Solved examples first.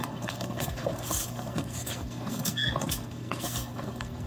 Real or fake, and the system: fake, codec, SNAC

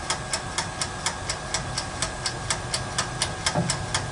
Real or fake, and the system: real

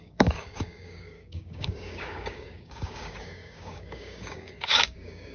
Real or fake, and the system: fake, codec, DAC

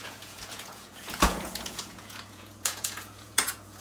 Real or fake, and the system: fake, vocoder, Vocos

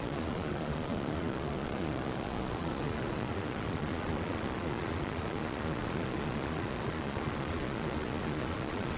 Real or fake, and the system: fake, vocoder, Vocos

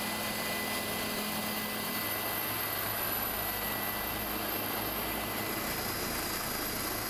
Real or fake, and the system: real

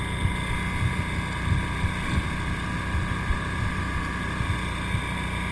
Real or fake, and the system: real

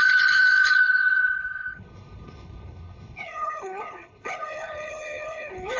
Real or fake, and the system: fake, codec, HILCodec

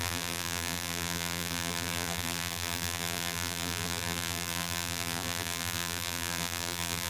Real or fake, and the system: fake, vocoder, BigVGAN v2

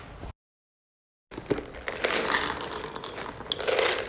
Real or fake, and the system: real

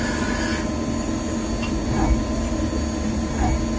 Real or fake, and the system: real